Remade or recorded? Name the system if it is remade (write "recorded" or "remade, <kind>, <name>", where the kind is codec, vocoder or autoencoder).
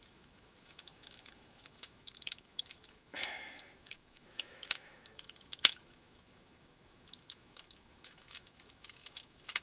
remade, autoencoder, DAC-VAE